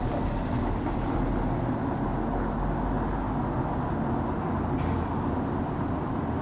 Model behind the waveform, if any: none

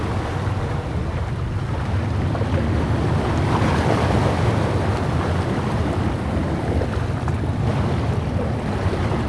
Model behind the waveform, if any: none